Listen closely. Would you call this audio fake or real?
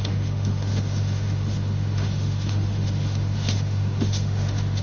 fake